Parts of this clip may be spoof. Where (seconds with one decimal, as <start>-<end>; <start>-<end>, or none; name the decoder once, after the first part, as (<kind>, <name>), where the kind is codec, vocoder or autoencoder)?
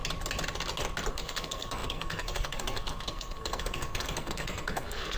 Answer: 1.1-5.2 (codec, SNAC)